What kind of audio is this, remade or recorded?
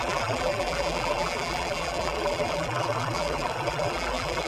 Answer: remade